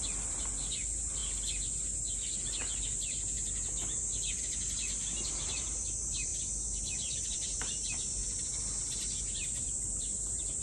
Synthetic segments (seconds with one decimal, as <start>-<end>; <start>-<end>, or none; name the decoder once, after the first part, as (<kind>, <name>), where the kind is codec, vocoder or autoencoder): 0.0-1.2 (vocoder, BigVGAN v2); 4.4-6.3; 6.8-10.6